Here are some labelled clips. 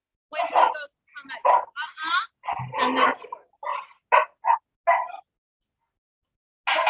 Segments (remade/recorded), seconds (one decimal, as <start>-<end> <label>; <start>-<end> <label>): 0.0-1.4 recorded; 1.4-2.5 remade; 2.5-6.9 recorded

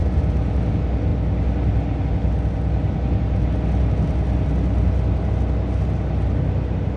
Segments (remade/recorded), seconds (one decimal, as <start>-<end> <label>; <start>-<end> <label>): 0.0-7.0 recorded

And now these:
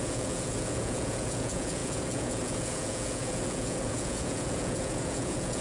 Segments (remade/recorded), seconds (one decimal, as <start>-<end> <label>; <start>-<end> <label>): 0.0-5.6 remade